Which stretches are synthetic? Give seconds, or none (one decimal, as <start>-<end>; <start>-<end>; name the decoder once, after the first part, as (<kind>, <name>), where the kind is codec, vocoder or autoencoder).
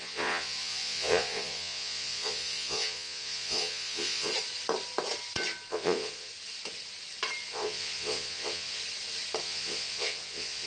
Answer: 0.0-4.3 (vocoder, Vocos); 5.7-6.3; 7.5-8.8; 9.4-10.7